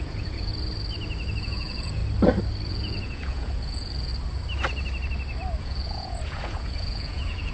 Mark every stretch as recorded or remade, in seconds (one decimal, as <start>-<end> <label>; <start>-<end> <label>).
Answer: 0.0-0.5 remade; 0.5-1.4 recorded; 1.4-2.0 remade; 2.0-2.7 recorded; 2.7-4.1 remade; 4.1-5.6 recorded; 5.6-7.5 remade